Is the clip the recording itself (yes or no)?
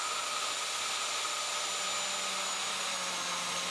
yes